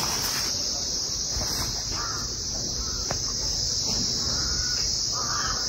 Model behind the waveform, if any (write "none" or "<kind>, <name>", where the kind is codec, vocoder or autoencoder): none